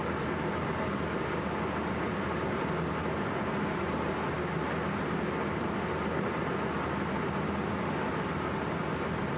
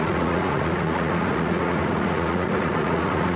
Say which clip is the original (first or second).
first